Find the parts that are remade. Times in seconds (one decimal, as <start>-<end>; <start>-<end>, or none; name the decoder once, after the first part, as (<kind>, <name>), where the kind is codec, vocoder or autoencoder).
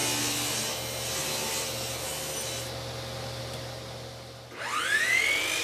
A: none